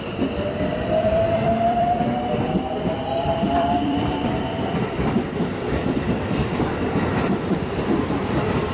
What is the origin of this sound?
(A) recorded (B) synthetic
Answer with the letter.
B